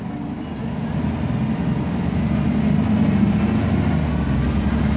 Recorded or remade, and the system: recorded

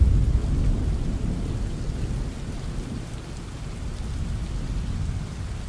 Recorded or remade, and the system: recorded